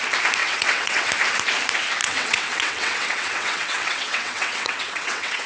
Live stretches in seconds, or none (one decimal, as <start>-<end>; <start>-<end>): 0.0-0.4; 1.1-2.0